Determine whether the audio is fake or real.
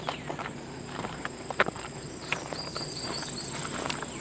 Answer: fake